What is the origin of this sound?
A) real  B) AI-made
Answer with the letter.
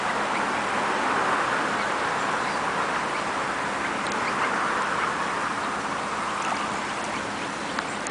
A